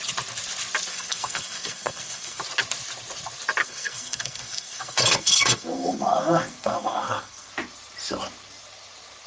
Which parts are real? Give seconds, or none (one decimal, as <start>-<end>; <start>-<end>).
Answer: 0.0-0.9; 2.4-3.6; 7.5-9.3

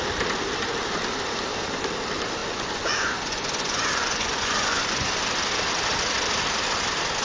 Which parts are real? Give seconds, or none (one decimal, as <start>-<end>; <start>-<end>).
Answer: 0.0-2.4; 5.2-7.2

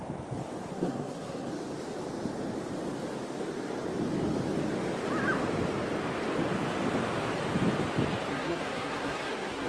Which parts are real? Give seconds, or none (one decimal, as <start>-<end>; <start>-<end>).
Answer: 0.0-0.7; 1.5-8.3

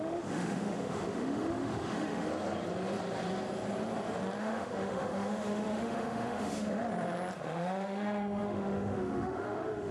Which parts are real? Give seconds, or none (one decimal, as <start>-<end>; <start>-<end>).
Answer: 2.3-4.4; 6.8-7.4